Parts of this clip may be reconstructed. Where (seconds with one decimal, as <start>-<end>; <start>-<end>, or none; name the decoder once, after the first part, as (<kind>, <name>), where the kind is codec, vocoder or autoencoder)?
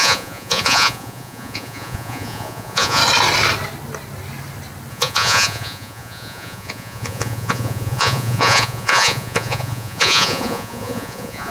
0.0-3.0 (vocoder, Vocos); 4.9-11.5